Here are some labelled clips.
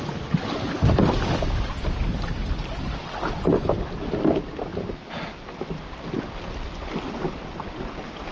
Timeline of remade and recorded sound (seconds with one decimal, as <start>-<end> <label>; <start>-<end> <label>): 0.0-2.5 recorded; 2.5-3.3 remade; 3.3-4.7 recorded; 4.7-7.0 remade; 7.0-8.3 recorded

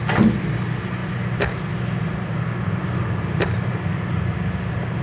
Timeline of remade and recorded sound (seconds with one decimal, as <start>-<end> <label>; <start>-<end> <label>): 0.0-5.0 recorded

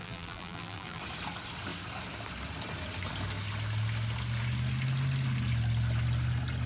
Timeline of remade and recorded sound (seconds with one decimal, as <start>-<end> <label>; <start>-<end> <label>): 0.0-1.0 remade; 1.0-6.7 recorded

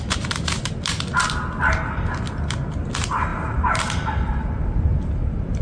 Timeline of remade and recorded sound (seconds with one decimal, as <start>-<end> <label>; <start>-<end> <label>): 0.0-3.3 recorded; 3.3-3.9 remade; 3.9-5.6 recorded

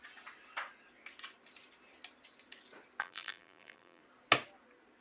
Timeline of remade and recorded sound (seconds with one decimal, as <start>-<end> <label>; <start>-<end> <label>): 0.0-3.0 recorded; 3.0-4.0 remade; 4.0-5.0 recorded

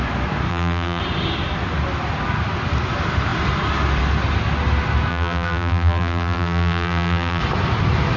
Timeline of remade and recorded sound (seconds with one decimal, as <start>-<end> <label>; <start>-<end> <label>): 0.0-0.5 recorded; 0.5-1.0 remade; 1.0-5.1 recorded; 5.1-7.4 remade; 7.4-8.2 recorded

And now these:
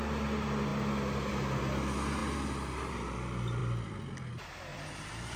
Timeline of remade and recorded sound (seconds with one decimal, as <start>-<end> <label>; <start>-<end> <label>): 0.0-4.7 recorded; 4.7-5.4 remade

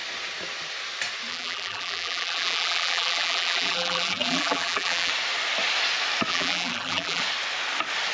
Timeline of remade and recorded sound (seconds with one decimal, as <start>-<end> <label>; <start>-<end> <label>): 0.0-1.3 recorded; 1.3-5.1 remade; 5.1-6.3 recorded; 6.3-7.2 remade; 7.2-8.1 recorded